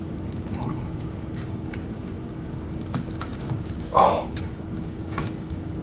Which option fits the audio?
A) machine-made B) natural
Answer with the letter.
A